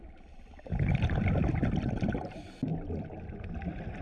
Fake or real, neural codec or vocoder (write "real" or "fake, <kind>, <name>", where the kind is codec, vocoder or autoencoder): real